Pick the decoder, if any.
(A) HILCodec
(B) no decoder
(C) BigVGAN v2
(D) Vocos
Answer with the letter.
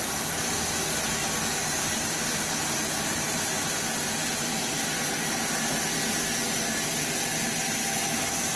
B